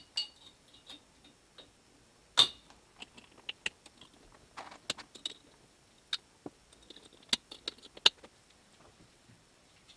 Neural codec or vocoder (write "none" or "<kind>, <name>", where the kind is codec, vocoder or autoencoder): none